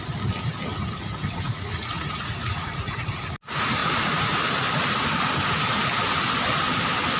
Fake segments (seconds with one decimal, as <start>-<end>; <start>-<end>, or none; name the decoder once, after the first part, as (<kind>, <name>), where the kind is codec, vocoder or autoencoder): 0.7-3.2 (vocoder, Vocos); 3.8-4.4